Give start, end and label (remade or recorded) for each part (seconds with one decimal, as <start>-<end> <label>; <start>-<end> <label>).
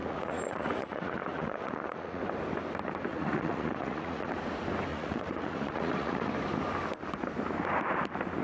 0.0-2.2 remade; 2.2-3.1 recorded; 3.1-4.3 remade; 4.3-4.9 recorded; 4.9-6.3 remade; 6.3-8.4 recorded